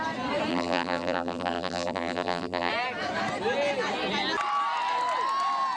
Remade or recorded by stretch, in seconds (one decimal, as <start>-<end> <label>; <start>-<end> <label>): 0.0-0.5 recorded; 0.5-2.7 remade; 2.7-5.8 recorded